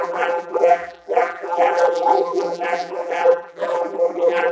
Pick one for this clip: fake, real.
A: fake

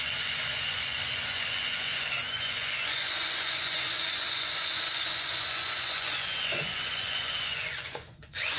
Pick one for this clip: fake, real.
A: fake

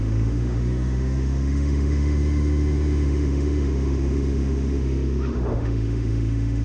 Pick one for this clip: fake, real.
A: fake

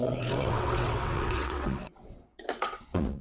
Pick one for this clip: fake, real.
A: fake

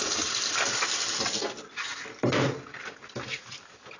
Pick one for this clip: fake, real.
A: real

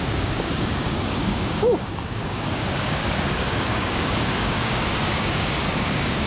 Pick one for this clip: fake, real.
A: fake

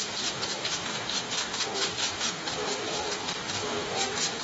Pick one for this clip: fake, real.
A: fake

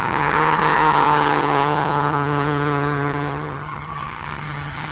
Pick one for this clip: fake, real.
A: fake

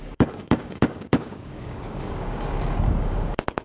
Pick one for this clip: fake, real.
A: fake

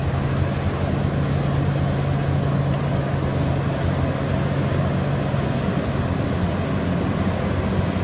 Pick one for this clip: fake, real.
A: real